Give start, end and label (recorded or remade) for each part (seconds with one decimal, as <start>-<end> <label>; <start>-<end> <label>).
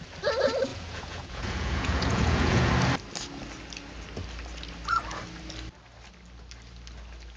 0.0-0.7 recorded; 0.7-2.7 remade; 2.7-7.4 recorded